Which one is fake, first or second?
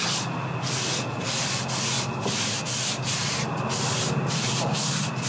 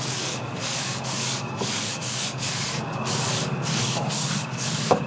second